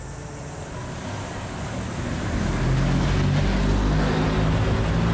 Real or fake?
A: real